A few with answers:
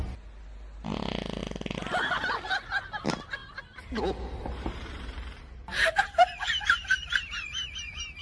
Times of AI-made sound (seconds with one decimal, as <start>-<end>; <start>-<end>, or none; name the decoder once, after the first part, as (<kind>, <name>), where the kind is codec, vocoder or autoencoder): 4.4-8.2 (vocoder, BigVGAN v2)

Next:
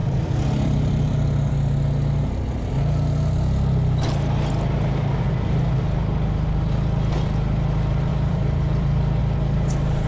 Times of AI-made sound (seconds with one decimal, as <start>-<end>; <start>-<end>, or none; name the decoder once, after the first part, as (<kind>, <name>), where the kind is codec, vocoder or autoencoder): 0.0-1.5 (vocoder, BigVGAN v2); 8.1-9.2

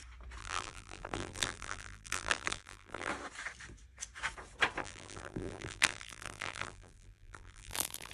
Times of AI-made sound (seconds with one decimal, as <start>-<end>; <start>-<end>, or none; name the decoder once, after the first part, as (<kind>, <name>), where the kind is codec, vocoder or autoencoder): 0.4-3.1 (vocoder, BigVGAN v2); 4.8-8.1